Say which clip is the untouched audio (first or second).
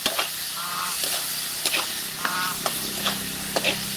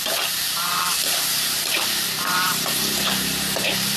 first